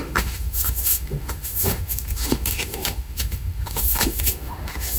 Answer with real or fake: fake